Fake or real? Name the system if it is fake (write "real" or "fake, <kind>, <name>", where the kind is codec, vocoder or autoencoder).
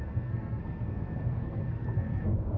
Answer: fake, codec, SNAC